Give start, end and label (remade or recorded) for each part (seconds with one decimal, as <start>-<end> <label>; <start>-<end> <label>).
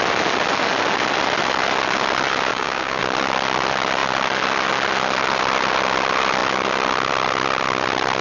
0.0-2.5 recorded; 2.5-3.0 remade; 3.0-8.2 recorded